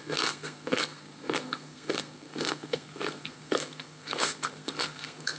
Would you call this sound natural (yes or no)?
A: no